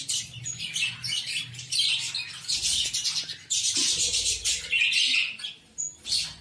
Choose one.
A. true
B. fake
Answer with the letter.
A